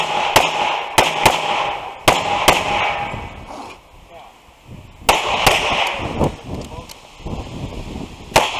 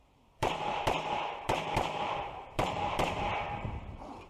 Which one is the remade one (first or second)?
second